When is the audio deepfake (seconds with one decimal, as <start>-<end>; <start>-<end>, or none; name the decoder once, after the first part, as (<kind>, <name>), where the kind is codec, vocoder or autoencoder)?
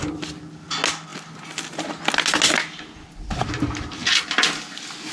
none